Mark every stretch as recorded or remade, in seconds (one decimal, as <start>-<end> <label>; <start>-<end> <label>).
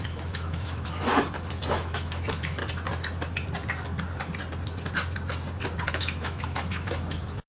0.0-1.1 remade; 1.1-1.7 recorded; 1.7-2.6 remade; 2.6-5.9 recorded; 5.9-7.5 remade